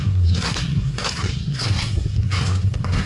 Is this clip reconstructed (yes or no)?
yes